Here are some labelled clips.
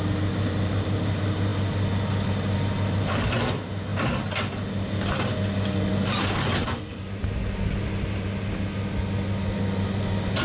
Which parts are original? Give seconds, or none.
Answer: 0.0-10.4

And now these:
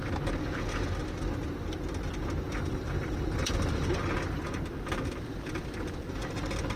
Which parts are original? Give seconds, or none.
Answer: 0.0-2.5; 3.9-6.8